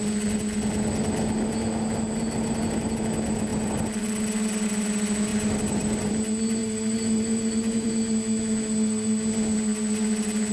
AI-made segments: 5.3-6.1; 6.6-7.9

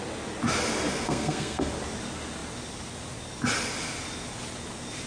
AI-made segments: 0.9-1.7